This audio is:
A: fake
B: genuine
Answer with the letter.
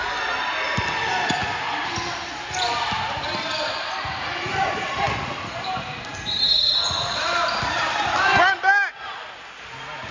B